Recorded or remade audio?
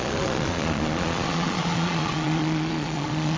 remade